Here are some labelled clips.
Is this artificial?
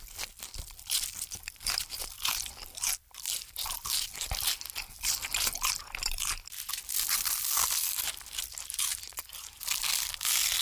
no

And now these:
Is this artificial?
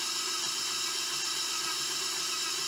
no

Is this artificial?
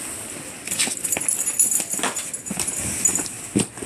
no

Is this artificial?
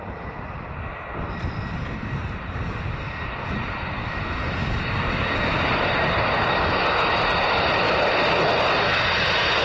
no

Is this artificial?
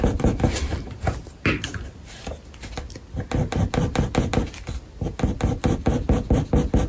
no